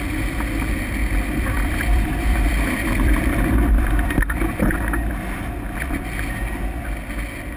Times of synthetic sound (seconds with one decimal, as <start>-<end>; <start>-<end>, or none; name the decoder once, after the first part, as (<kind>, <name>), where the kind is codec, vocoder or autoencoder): 1.0-4.7 (vocoder, BigVGAN v2)